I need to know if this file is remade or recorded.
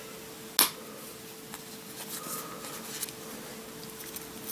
recorded